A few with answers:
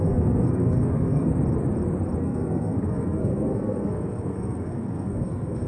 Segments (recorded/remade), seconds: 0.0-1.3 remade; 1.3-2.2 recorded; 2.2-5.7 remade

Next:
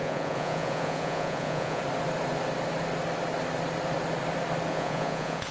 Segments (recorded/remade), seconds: 0.0-1.8 remade; 1.8-4.7 recorded; 4.7-5.5 remade